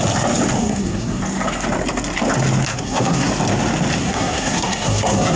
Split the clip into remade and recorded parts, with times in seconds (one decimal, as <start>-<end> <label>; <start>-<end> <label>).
0.0-0.6 recorded; 0.6-1.2 remade; 1.2-2.7 recorded; 2.7-3.3 remade; 3.3-4.0 recorded; 4.0-5.4 remade